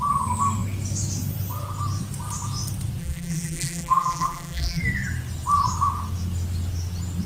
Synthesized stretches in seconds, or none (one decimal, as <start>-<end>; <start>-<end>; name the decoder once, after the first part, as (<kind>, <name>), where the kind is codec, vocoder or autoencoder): 3.0-4.8 (vocoder, BigVGAN v2)